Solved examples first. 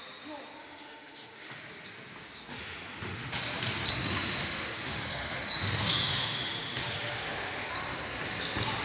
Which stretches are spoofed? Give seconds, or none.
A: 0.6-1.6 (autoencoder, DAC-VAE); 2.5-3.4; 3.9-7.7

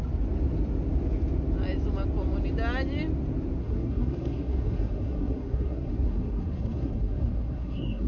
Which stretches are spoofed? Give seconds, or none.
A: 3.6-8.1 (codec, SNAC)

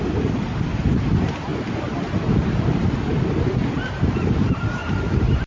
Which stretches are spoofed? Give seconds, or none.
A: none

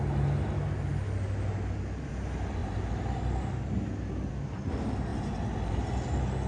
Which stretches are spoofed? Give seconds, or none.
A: none